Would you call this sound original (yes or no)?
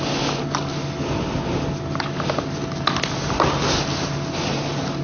yes